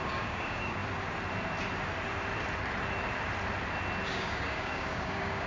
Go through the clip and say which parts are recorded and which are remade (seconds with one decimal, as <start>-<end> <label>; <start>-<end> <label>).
0.0-0.8 remade; 0.8-4.1 recorded; 4.1-5.5 remade